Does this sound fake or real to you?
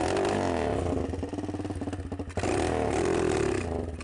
real